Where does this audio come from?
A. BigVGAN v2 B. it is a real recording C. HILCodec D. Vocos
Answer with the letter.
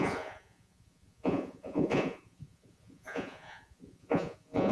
D